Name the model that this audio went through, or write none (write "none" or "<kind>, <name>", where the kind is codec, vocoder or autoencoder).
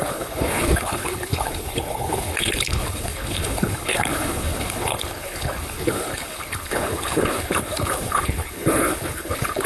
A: codec, HILCodec